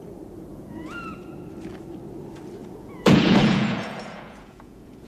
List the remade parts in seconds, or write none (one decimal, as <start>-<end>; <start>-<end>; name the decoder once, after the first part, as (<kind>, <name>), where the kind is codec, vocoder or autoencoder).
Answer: 0.5-1.3 (vocoder, Vocos); 2.6-5.1